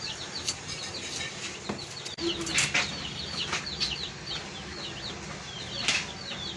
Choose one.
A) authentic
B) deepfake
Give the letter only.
A